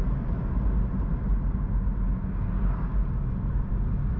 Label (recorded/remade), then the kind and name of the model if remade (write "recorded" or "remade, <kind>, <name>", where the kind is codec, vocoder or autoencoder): recorded